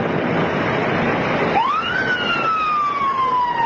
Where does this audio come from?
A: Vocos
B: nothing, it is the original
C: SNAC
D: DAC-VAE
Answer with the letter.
B